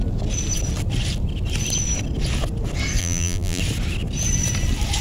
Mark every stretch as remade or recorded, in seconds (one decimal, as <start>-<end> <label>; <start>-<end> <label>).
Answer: 0.0-3.0 recorded; 3.0-3.6 remade; 3.6-5.0 recorded